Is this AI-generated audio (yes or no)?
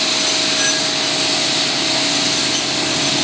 no